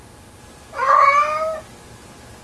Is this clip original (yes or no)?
yes